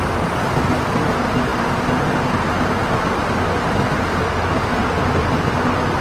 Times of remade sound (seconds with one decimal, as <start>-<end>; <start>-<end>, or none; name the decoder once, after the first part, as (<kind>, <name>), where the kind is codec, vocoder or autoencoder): none